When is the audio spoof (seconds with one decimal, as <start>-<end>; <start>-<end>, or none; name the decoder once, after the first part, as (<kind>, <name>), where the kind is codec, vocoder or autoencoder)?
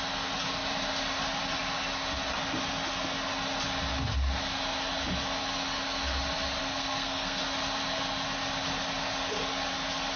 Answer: 6.6-7.4 (codec, SNAC)